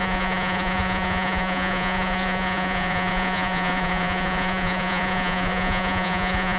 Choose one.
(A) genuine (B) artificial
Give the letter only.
B